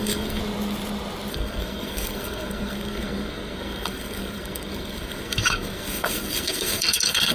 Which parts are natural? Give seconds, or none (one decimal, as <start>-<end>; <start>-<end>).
0.4-1.3